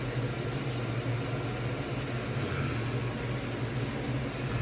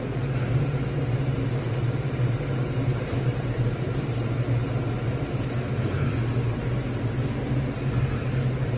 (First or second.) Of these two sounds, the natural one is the first